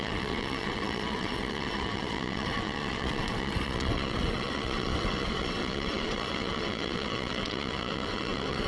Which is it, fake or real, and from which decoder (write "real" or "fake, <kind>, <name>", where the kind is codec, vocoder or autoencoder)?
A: fake, vocoder, WaveNeXt